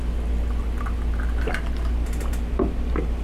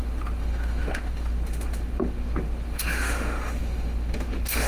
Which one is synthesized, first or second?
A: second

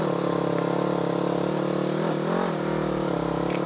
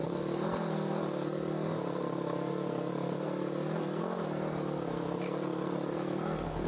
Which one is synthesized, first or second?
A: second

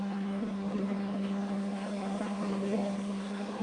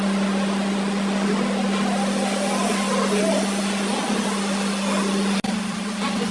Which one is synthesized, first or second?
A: first